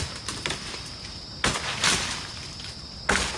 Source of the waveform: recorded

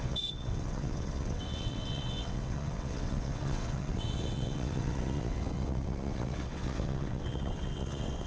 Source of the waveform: remade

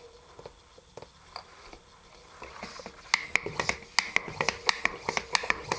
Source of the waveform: recorded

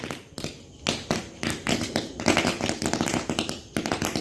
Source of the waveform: recorded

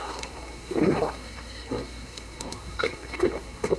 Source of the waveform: remade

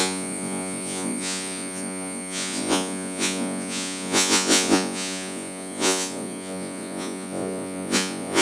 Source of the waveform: remade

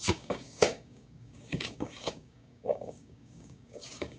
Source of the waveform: remade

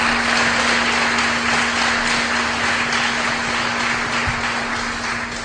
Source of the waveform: recorded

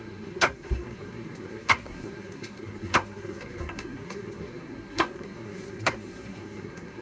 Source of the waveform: remade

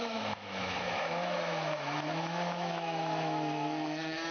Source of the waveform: remade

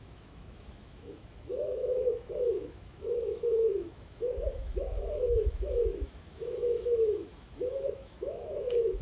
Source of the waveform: remade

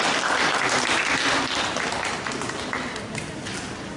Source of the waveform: recorded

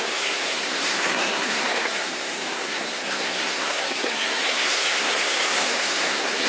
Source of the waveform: remade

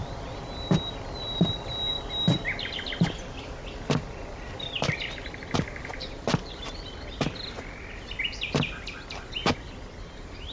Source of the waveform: recorded